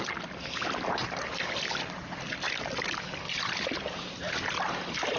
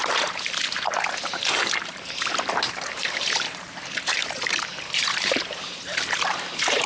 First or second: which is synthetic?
second